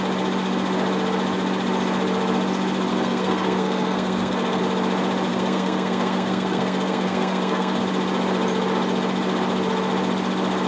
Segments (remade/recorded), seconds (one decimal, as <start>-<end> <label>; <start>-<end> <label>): 0.0-2.9 recorded; 2.9-4.6 remade; 4.6-5.3 recorded; 5.3-7.8 remade; 7.8-10.7 recorded